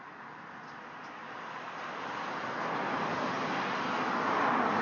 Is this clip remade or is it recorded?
recorded